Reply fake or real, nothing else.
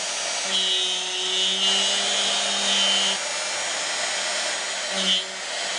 real